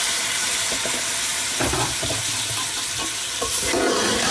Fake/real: fake